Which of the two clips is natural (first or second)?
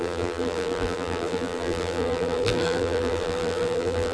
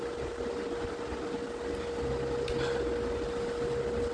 second